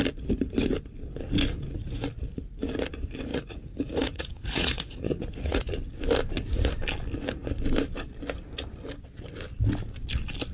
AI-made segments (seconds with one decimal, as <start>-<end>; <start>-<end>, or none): 3.3-5.7